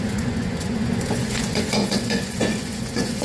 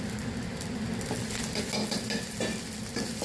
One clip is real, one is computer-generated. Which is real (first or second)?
second